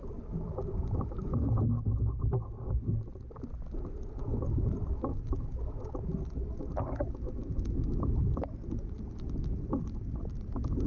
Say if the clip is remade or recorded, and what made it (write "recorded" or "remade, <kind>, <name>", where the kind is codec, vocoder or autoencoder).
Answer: recorded